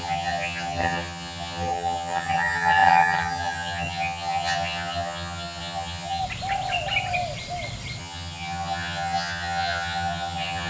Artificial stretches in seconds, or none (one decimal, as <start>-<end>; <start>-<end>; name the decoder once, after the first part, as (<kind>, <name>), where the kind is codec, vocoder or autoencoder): 0.0-6.2 (vocoder, HiFi-GAN); 8.0-10.7